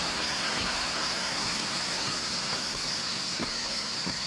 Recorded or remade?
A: remade